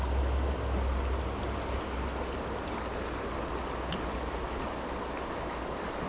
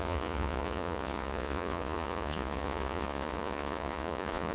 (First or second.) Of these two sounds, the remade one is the second